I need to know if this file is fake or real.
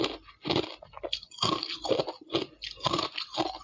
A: real